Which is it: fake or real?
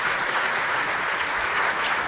fake